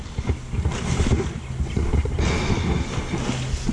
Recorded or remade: recorded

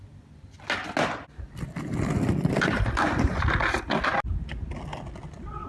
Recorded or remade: recorded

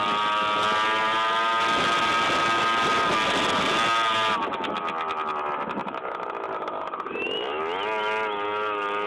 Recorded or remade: recorded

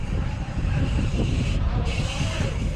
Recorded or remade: remade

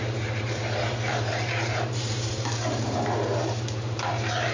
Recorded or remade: remade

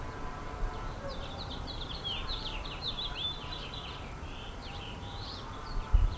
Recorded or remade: remade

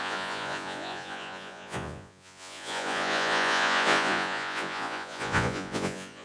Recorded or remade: remade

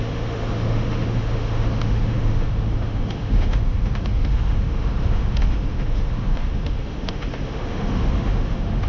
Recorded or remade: remade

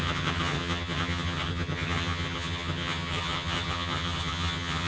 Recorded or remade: remade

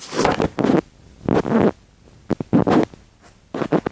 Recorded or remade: recorded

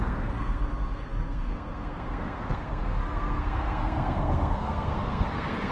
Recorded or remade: remade